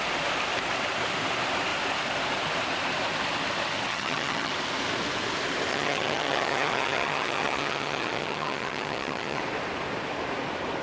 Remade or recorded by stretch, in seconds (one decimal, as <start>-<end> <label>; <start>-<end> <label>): 0.0-3.9 recorded; 3.9-4.5 remade; 4.5-5.7 recorded; 5.7-9.4 remade; 9.4-10.8 recorded